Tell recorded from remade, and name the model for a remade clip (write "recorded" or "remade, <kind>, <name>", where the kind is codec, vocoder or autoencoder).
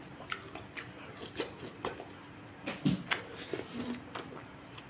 recorded